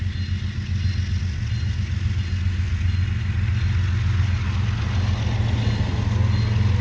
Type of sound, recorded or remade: recorded